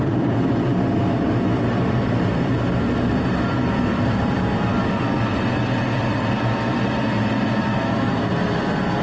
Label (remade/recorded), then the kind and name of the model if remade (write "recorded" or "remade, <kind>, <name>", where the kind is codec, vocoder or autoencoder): remade, vocoder, BigVGAN v2